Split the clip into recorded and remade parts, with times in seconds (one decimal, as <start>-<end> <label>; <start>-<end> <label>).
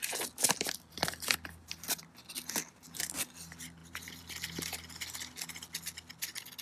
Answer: 0.0-6.6 recorded